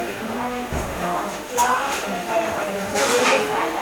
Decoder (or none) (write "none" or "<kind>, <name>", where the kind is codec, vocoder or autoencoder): autoencoder, DAC-VAE